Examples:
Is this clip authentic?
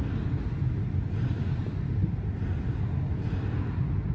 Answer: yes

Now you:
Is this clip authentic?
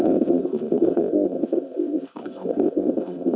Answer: no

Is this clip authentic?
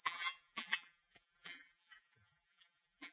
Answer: no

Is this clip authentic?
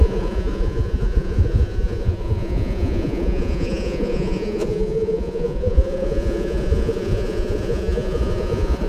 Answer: no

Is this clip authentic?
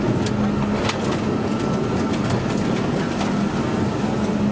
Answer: yes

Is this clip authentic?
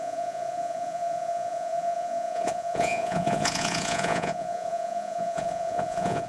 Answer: no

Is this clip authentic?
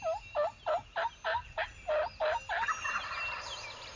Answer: yes